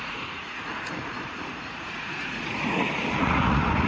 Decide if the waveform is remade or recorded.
remade